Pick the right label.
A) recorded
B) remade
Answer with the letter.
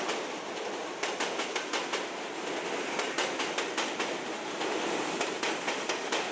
A